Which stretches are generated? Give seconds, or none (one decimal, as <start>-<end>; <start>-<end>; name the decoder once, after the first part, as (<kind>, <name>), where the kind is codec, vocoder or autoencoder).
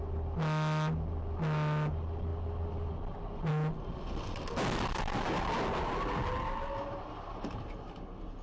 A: none